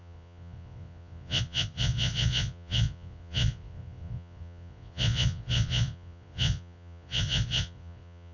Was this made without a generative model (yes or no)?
no